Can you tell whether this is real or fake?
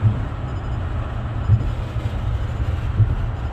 real